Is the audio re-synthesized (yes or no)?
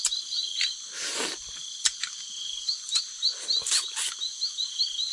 yes